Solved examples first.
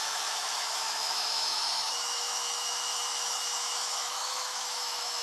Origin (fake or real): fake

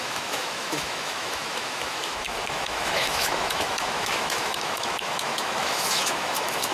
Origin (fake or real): fake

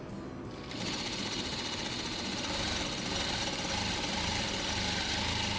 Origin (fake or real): real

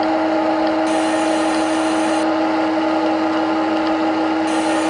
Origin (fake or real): real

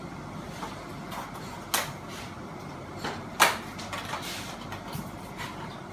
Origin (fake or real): real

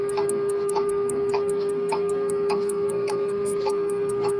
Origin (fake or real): fake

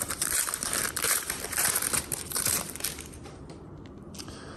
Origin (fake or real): fake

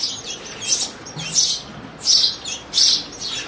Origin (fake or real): real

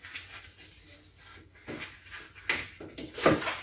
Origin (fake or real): real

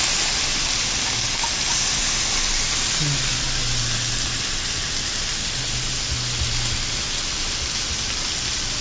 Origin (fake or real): real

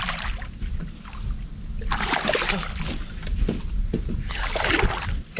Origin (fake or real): real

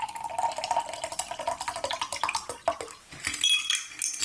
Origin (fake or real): real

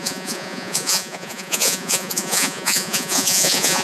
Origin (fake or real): fake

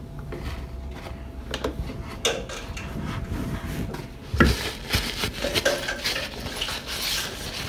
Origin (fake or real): real